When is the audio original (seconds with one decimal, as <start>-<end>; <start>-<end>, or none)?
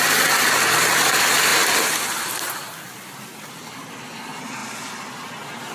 0.0-5.7